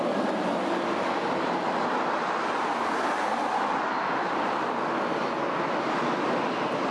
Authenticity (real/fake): real